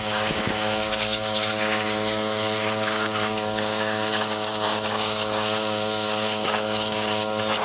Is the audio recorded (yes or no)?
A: no